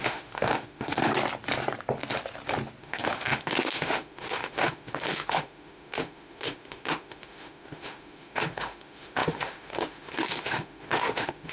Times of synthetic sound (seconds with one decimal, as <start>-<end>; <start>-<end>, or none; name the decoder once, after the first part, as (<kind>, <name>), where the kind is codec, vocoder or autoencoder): 0.0-1.1 (autoencoder, DAC-VAE); 2.8-11.5